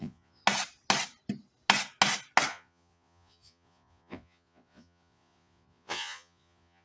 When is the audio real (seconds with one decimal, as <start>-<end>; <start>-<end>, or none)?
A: 0.4-2.5